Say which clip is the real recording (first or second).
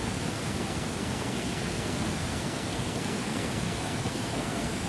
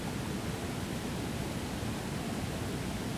second